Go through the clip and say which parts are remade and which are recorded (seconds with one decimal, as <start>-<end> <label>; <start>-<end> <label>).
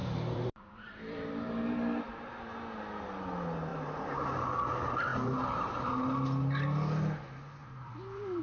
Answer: 0.0-2.0 remade; 2.0-3.7 recorded; 3.7-4.4 remade; 4.4-5.1 recorded; 5.1-5.9 remade; 5.9-7.6 recorded; 7.6-8.4 remade